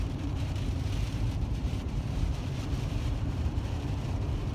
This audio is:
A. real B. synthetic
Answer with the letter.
B